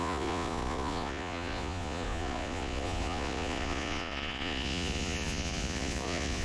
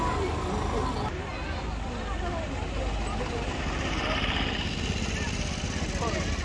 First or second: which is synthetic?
first